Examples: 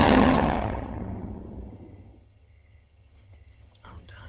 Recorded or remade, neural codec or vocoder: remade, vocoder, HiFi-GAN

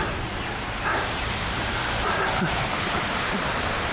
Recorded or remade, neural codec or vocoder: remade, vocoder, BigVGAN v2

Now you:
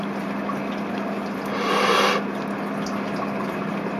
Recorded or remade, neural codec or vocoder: recorded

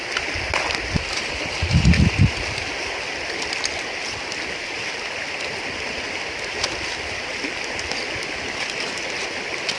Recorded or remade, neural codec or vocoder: recorded